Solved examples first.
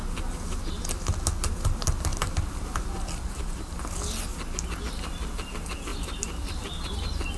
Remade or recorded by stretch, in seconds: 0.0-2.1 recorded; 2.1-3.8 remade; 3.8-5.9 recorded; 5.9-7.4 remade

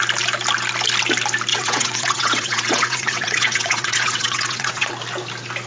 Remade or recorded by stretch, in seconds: 0.0-1.5 recorded; 1.5-4.9 remade; 4.9-5.7 recorded

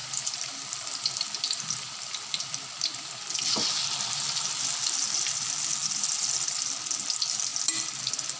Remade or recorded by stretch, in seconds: 0.0-4.7 remade; 4.7-5.8 recorded; 5.8-6.5 remade; 6.5-8.4 recorded

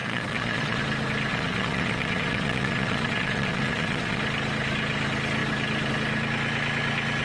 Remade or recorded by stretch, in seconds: 0.0-0.8 remade; 0.8-1.3 recorded; 1.3-4.2 remade; 4.2-7.2 recorded

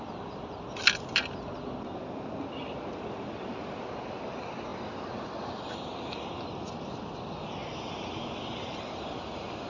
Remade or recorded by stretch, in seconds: 0.0-4.7 recorded; 4.7-6.4 remade; 6.4-9.7 recorded

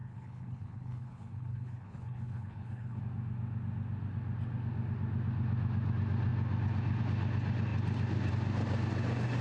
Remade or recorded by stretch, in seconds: 0.0-3.0 remade; 3.0-9.4 recorded

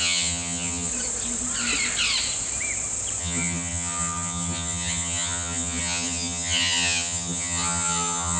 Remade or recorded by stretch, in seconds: 0.0-0.9 remade; 0.9-3.2 recorded; 3.2-8.4 remade

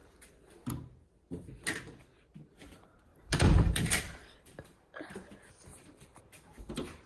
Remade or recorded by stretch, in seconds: 0.0-3.1 recorded; 3.1-5.3 remade; 5.3-5.7 recorded; 5.7-7.1 remade